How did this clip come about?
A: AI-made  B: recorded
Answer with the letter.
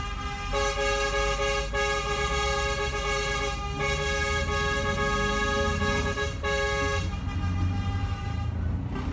B